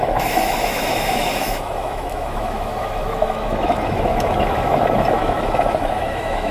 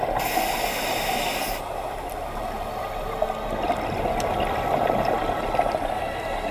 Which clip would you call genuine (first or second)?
second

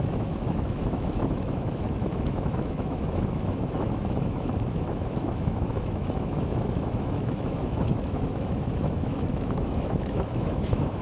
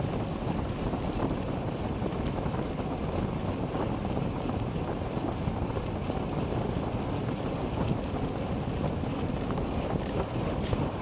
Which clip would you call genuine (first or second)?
second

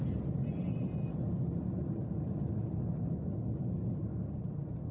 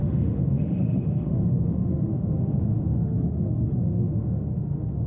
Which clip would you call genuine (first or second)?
first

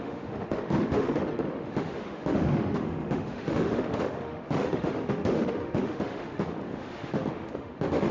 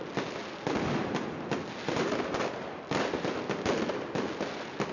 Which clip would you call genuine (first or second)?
second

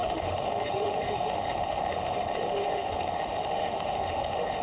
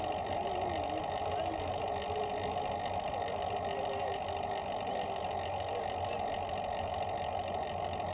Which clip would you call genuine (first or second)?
second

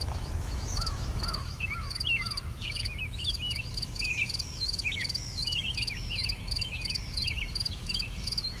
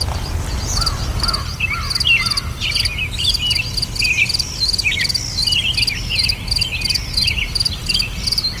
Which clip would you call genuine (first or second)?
second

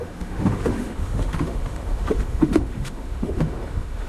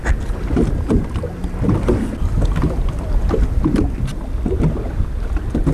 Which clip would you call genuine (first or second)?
second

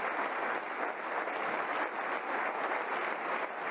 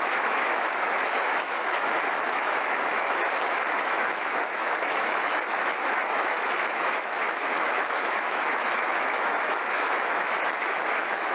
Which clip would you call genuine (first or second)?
first